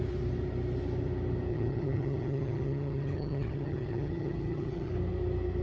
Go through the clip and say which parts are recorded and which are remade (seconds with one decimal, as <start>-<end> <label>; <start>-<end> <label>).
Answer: 0.0-1.5 recorded; 1.5-4.9 remade; 4.9-5.6 recorded